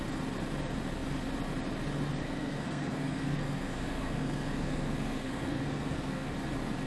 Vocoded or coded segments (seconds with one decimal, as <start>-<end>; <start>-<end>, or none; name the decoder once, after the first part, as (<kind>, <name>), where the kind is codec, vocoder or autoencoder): 2.2-6.3 (codec, SNAC)